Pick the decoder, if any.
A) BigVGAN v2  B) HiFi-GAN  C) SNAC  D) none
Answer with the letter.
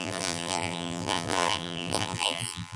A